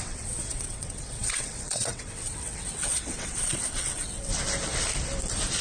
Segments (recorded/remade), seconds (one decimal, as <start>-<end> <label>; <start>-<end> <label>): 0.0-4.3 remade; 4.3-5.6 recorded